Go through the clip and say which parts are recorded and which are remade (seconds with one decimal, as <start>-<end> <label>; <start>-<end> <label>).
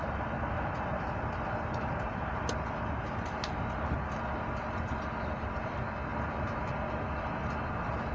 0.0-6.1 recorded; 6.1-6.7 remade; 6.7-8.1 recorded